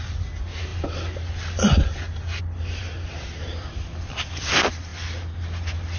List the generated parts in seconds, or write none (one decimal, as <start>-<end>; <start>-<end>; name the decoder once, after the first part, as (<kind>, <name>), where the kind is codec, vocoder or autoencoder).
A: none